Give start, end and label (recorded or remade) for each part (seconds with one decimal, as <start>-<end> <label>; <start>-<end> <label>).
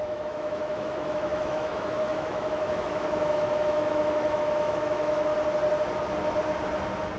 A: 0.0-5.3 remade; 5.3-7.2 recorded